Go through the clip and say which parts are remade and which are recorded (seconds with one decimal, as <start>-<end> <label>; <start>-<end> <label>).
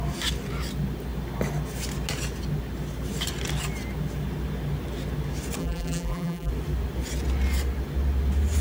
0.0-5.6 recorded; 5.6-6.5 remade; 6.5-8.6 recorded